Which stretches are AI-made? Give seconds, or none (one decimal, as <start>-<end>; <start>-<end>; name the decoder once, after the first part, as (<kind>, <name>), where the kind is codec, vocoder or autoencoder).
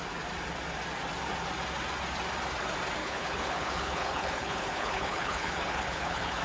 3.0-6.4 (codec, HILCodec)